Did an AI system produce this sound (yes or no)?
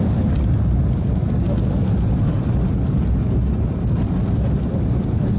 no